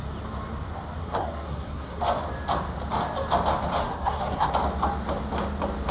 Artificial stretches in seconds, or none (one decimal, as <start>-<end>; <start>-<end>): 1.0-2.0; 3.8-4.5